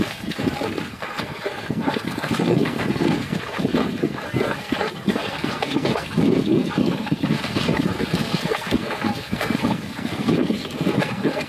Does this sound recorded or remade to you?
remade